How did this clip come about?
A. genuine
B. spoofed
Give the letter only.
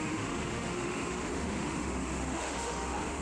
B